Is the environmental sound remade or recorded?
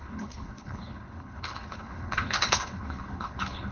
remade